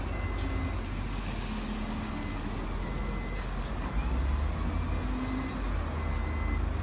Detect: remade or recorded recorded